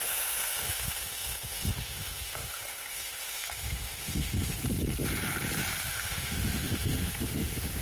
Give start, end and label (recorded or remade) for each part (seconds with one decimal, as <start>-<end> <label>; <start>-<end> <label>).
0.0-4.6 remade; 4.6-5.9 recorded; 5.9-7.8 remade